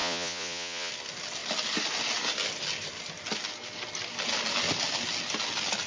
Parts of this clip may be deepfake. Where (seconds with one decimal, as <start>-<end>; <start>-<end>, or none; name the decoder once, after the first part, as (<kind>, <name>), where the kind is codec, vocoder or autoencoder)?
0.0-0.9 (vocoder, Vocos)